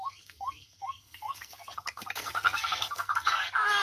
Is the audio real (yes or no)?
no